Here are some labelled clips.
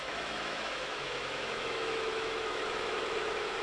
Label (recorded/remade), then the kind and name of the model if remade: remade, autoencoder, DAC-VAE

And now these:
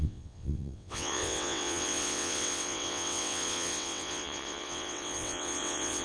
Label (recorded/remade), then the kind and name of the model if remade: remade, vocoder, WaveNeXt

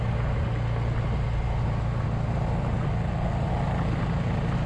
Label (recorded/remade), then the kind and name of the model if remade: recorded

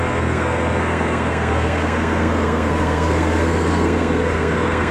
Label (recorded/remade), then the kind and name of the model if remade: remade, codec, SNAC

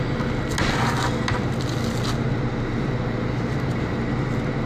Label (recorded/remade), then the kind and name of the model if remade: recorded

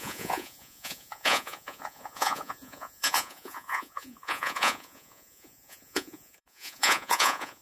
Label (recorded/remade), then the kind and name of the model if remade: remade, vocoder, Vocos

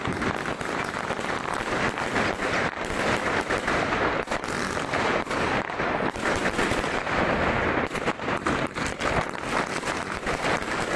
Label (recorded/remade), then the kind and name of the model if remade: recorded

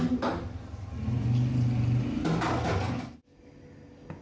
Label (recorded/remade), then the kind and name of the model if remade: recorded